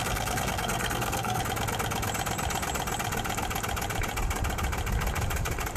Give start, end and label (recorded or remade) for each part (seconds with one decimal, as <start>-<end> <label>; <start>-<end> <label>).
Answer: 0.0-1.4 remade; 1.4-5.8 recorded